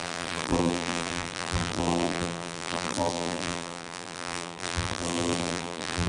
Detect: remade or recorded remade